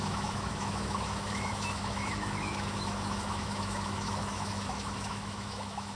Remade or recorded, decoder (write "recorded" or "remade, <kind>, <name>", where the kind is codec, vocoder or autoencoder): remade, autoencoder, DAC-VAE